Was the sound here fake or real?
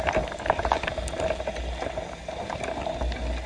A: real